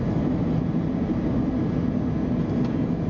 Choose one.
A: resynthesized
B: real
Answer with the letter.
B